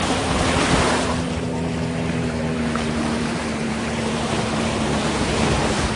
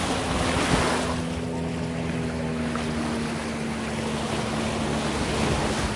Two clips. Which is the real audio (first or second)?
second